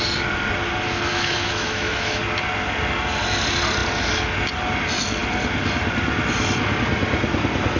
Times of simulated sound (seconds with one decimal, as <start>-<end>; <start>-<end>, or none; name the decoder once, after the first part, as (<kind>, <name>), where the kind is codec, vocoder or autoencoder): 1.1-2.2 (autoencoder, DAC-VAE)